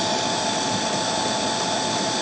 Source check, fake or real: real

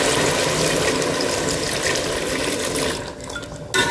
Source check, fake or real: real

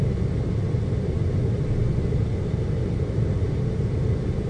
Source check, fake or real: real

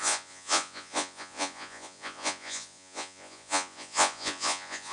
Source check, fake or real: fake